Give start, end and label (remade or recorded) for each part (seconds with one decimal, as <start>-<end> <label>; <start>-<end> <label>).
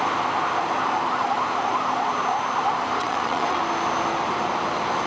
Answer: 0.0-3.0 recorded; 3.0-3.6 remade; 3.6-5.1 recorded